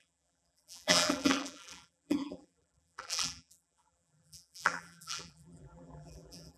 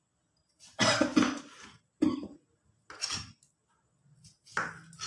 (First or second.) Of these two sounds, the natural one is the second